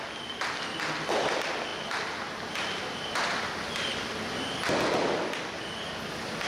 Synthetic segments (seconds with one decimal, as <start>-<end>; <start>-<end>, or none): none